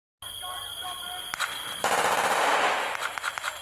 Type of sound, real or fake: real